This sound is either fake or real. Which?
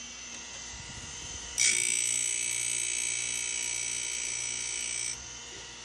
real